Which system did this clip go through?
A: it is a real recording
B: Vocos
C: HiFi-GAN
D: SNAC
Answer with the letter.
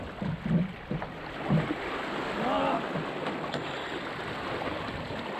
A